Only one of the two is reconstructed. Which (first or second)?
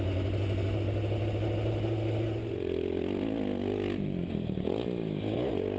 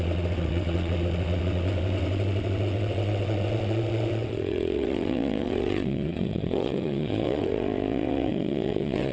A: second